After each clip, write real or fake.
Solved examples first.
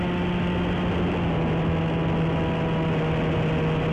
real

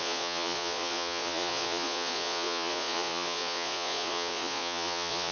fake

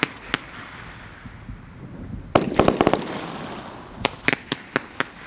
real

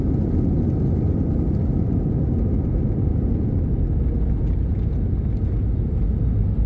real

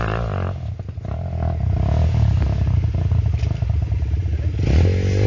real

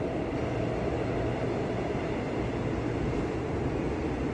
real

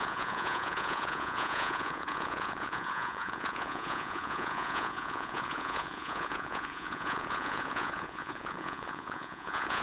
fake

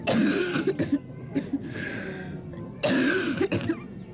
real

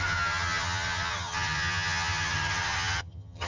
fake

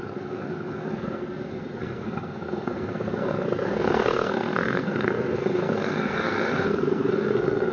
fake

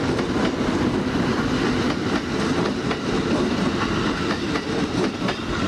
real